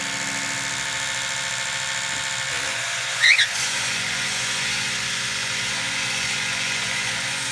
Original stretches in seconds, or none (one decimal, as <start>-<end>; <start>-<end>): 0.0-2.7